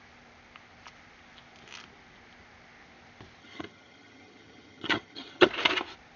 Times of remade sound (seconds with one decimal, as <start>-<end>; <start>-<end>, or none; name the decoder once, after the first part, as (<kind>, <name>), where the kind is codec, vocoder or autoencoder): 3.4-5.5 (vocoder, HiFi-GAN)